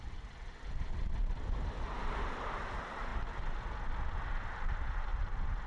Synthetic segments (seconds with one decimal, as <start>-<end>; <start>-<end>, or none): 0.0-3.1; 4.3-5.1